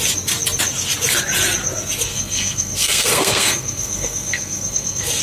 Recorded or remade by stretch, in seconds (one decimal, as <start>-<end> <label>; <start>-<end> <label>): 0.0-2.1 recorded; 2.1-5.2 remade

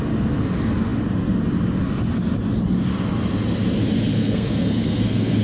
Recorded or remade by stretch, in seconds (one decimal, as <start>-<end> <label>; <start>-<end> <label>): 0.0-4.1 recorded; 4.1-5.4 remade